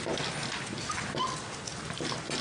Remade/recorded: recorded